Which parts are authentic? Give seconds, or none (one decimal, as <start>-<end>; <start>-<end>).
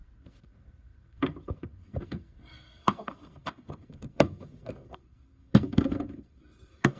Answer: none